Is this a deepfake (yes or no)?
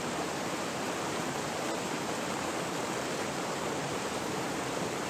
yes